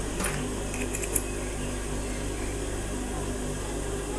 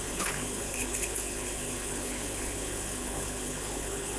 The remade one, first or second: second